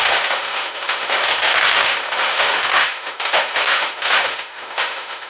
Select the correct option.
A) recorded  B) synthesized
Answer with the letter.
B